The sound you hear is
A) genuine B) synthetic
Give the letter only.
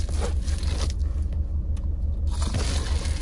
A